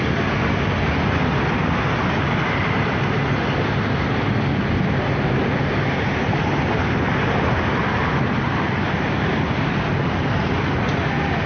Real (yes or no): yes